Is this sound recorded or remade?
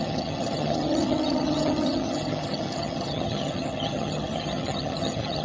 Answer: remade